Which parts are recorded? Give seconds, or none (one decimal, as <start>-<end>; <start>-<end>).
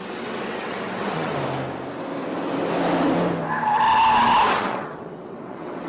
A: 1.3-4.5